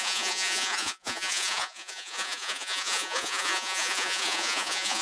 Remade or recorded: remade